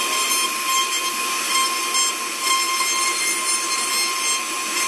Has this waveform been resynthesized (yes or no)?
no